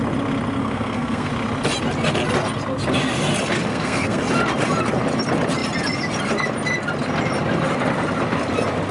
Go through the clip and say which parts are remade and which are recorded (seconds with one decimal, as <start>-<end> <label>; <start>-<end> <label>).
0.0-0.6 recorded; 0.6-1.3 remade; 1.3-3.7 recorded; 3.7-4.2 remade; 4.2-8.9 recorded